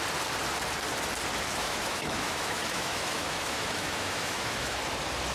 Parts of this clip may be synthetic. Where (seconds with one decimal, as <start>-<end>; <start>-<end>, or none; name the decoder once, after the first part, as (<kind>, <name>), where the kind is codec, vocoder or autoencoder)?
1.5-4.7 (autoencoder, DAC-VAE)